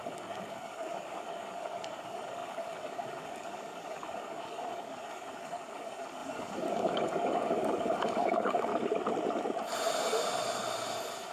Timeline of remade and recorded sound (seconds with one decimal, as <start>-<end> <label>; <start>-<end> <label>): 0.0-8.7 remade; 8.7-11.3 recorded